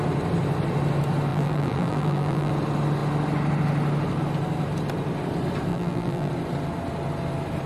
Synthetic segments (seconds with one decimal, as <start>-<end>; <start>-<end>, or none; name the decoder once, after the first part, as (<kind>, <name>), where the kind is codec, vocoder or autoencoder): 1.3-2.5 (vocoder, BigVGAN v2); 5.7-6.3